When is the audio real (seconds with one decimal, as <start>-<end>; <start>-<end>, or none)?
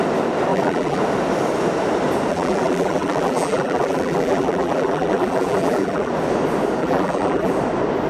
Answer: 0.0-0.5; 1.0-2.3; 6.1-6.8; 7.5-8.1